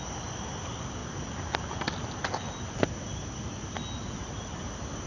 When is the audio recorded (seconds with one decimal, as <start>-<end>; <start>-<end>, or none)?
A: 0.0-5.1